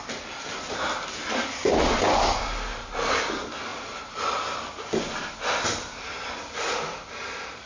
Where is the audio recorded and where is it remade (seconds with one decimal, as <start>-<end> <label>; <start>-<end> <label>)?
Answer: 0.0-2.7 recorded; 2.7-3.2 remade; 3.2-3.7 recorded; 3.7-4.4 remade; 4.4-7.7 recorded